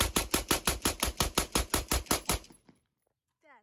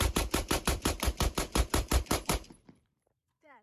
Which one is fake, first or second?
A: second